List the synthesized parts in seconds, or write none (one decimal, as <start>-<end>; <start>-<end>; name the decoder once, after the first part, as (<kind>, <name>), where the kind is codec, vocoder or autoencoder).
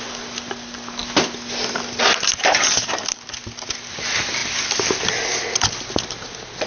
none